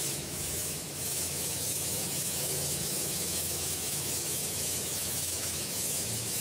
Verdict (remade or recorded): remade